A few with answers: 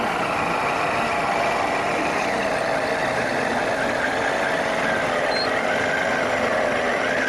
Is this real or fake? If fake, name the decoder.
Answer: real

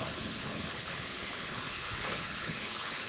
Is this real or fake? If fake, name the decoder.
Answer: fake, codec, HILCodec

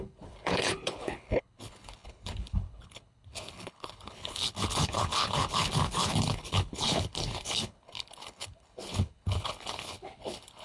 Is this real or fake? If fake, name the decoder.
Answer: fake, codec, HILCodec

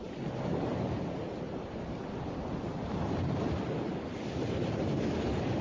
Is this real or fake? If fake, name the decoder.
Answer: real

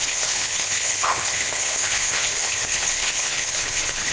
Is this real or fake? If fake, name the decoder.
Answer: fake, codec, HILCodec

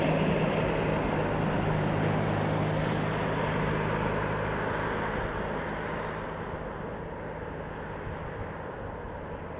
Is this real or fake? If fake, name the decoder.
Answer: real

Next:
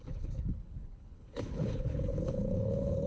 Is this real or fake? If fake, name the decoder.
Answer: fake, codec, HILCodec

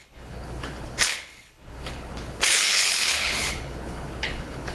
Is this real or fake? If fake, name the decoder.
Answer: fake, codec, HILCodec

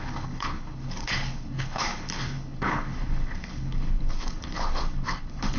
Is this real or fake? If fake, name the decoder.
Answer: fake, codec, HILCodec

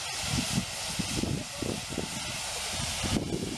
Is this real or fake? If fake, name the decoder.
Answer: real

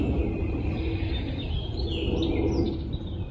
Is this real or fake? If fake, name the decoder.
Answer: real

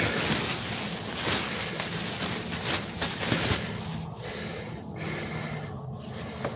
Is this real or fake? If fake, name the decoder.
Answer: real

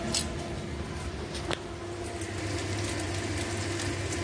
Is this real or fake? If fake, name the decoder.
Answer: real